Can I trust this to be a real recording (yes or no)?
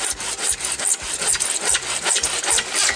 yes